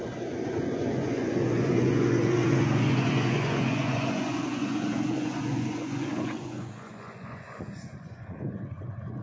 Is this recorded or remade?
remade